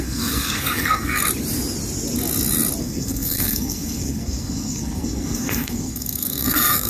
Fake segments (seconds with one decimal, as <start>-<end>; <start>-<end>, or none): 0.0-1.2; 2.8-6.9